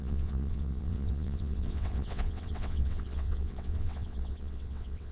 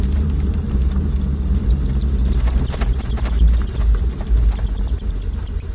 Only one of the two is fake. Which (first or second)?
first